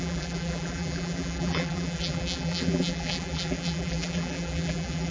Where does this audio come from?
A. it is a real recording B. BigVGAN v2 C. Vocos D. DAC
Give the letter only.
B